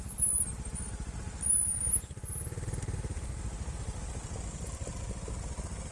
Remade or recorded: recorded